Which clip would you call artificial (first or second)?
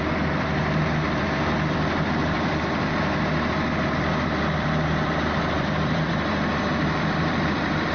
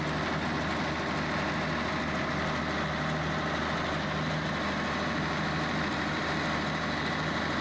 first